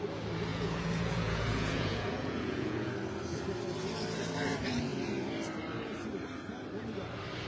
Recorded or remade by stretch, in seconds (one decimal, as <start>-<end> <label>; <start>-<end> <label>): 0.0-0.5 recorded; 0.5-2.9 remade; 2.9-7.5 recorded